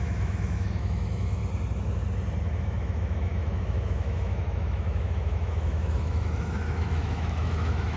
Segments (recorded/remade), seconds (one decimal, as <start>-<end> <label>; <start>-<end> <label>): 0.0-1.4 remade; 1.4-2.4 recorded; 2.4-8.0 remade